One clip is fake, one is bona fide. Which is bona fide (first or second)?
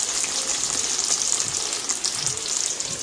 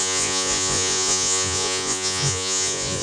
first